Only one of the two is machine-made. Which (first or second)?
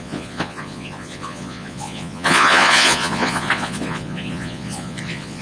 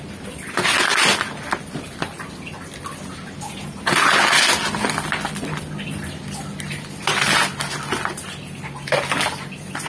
first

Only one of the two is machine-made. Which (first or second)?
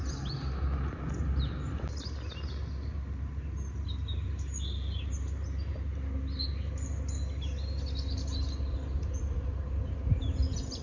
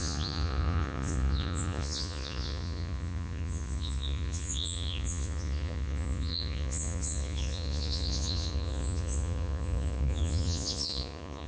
second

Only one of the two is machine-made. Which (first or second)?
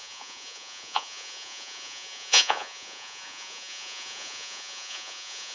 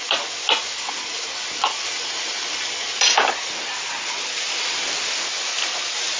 first